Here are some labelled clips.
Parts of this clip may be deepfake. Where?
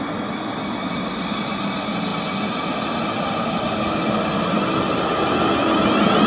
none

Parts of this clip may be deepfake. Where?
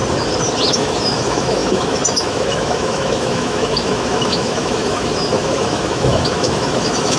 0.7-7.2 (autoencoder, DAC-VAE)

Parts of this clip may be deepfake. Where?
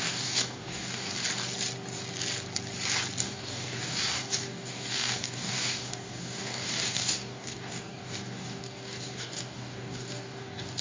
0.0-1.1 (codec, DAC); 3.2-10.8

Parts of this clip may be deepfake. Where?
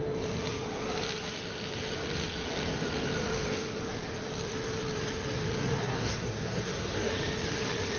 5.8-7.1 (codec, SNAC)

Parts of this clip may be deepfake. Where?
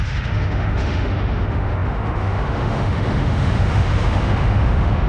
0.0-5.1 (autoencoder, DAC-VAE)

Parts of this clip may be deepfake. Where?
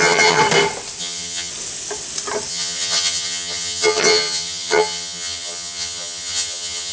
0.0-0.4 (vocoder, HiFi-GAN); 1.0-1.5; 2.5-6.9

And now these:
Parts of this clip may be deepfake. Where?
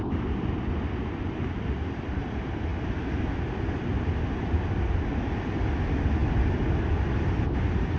none